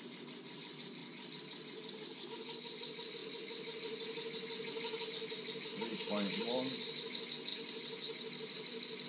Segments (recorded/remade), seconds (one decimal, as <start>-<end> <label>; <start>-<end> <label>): 0.0-9.1 recorded